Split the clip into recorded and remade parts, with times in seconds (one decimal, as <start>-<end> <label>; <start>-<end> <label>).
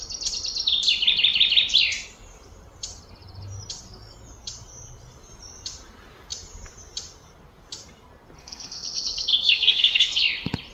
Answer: 0.0-8.4 recorded; 8.4-10.2 remade; 10.2-10.7 recorded